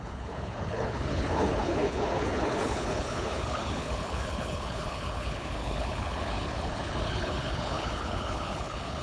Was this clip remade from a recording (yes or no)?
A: yes